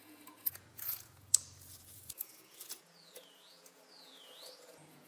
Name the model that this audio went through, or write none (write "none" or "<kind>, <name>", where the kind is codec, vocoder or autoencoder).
vocoder, Vocos